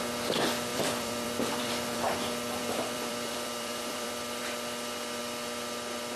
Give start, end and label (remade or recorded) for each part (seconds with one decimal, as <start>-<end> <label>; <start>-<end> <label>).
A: 0.0-0.7 recorded; 0.7-2.0 remade; 2.0-2.6 recorded; 2.6-4.4 remade; 4.4-6.2 recorded